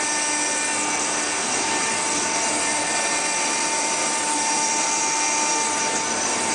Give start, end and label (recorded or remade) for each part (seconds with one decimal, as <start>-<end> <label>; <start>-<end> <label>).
0.0-2.7 recorded; 2.7-5.0 remade; 5.0-6.5 recorded